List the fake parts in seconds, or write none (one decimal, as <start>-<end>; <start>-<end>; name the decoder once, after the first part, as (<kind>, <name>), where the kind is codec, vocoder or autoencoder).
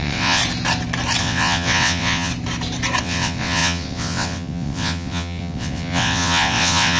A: 0.0-0.4 (vocoder, WaveNeXt); 1.2-2.3; 3.0-7.0